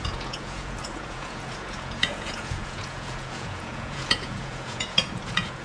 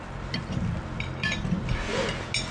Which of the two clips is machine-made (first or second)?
first